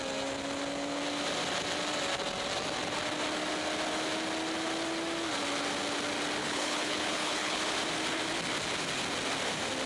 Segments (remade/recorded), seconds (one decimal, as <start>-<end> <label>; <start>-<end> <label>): 0.0-6.4 recorded; 6.4-7.6 remade; 7.6-9.9 recorded